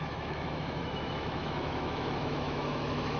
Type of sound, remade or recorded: remade